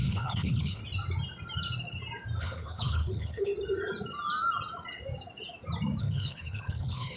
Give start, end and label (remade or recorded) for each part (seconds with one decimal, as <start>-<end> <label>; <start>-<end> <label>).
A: 0.0-0.8 remade; 0.8-2.4 recorded; 2.4-3.5 remade; 3.5-6.0 recorded; 6.0-7.2 remade